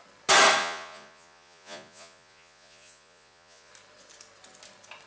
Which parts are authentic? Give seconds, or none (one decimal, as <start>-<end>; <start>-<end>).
0.0-0.6; 3.7-5.1